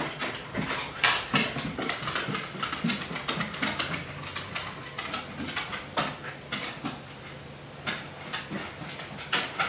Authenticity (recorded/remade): recorded